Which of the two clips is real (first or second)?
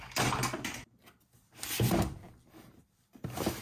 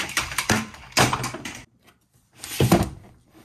first